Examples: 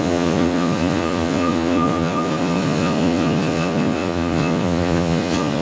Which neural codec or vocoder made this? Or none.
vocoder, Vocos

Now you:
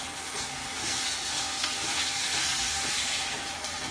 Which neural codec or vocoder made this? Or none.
codec, SNAC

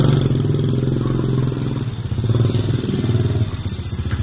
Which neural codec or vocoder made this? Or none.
none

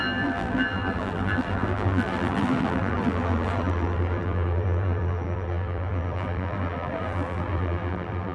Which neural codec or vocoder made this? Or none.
vocoder, BigVGAN v2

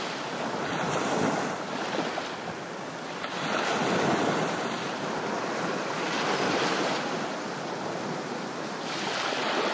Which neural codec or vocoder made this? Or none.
none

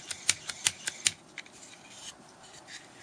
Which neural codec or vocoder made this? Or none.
none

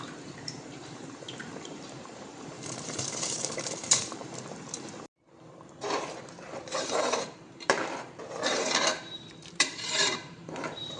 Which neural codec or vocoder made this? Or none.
vocoder, BigVGAN v2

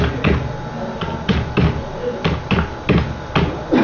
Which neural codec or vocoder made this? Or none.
none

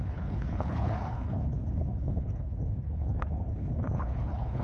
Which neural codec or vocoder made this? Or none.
codec, HILCodec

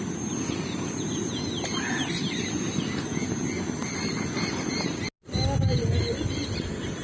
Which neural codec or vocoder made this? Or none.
none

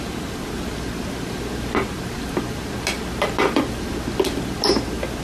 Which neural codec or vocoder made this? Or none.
none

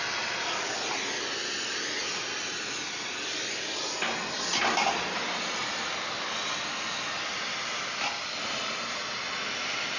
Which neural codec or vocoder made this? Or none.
none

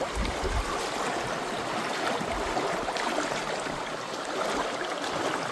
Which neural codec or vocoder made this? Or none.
none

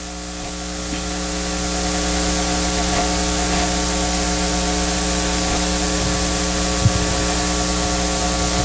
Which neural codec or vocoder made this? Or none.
none